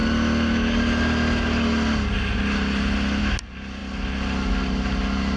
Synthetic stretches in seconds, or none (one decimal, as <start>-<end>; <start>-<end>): none